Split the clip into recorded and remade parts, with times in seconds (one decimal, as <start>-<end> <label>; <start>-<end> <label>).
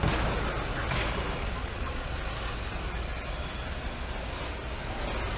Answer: 0.0-1.4 recorded; 1.4-2.1 remade; 2.1-5.4 recorded